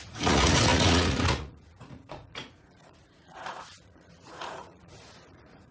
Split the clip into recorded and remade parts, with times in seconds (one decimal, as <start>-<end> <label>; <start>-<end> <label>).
0.0-5.7 remade